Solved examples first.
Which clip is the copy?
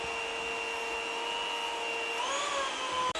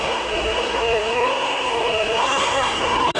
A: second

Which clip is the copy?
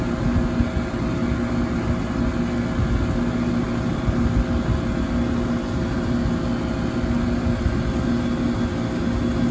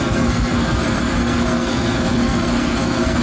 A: second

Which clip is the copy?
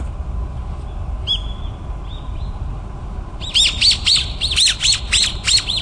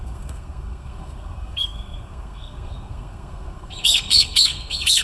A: second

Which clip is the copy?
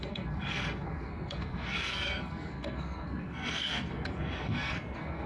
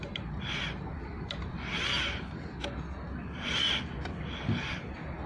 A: first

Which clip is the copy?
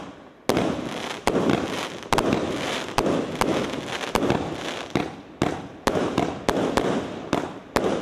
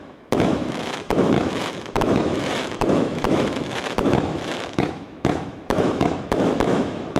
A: second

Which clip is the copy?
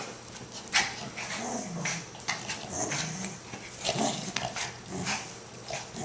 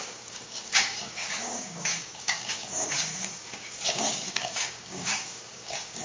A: second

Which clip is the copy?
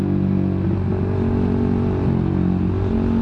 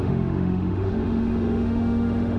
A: second